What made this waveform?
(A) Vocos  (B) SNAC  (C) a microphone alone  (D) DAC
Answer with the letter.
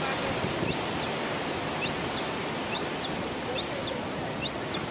C